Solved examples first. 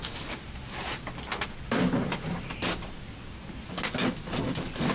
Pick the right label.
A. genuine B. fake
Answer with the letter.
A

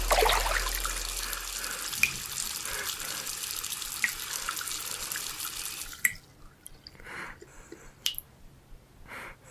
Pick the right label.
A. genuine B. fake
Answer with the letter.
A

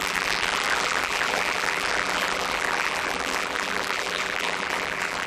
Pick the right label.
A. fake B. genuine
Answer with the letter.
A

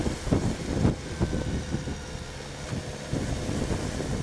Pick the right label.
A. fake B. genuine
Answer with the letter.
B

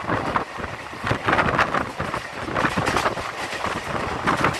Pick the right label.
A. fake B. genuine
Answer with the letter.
B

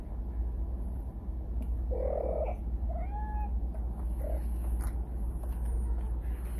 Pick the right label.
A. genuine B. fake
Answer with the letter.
A